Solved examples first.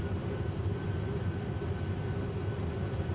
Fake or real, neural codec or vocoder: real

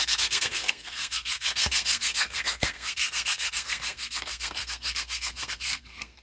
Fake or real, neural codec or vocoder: fake, codec, SNAC